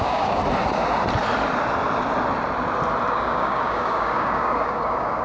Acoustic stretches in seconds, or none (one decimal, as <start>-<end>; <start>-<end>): 0.4-3.1